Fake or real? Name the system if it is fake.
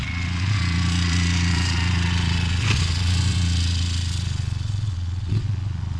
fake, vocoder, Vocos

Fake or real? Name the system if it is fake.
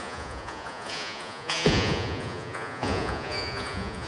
fake, vocoder, Vocos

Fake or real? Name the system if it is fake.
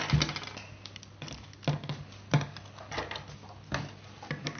real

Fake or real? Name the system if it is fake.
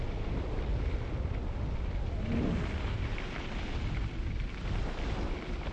real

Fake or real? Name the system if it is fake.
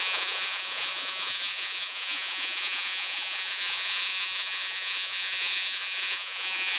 fake, vocoder, Vocos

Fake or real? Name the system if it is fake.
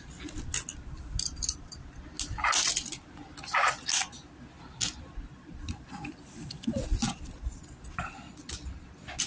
real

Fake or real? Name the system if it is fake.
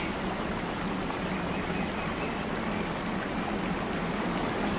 real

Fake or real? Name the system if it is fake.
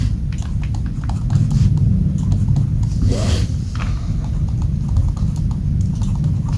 real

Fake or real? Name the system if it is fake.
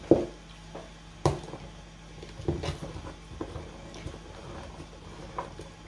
real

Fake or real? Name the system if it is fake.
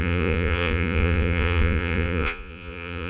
fake, vocoder, Vocos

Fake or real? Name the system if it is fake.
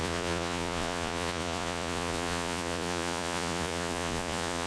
fake, vocoder, Vocos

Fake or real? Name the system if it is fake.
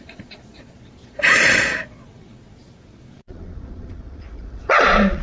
fake, vocoder, Vocos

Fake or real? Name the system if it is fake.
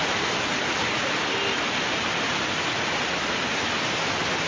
real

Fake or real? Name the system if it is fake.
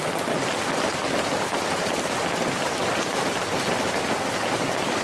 real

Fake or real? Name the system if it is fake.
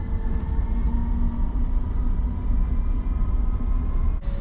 real